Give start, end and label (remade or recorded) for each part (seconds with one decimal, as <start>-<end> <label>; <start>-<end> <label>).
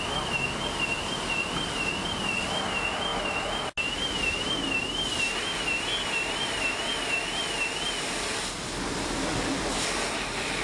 0.0-10.6 recorded